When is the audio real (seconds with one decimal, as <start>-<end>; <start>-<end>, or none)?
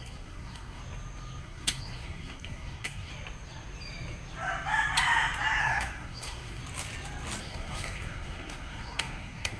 0.8-1.4; 3.1-5.6; 6.6-7.4